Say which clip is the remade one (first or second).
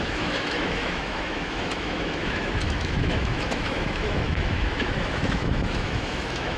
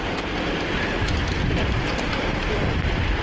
first